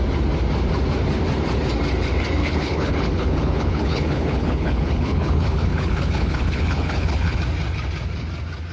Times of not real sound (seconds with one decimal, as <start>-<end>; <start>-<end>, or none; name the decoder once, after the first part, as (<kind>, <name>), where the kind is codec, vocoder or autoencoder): 2.4-7.4 (codec, HILCodec)